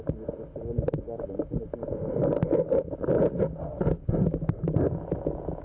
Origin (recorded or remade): recorded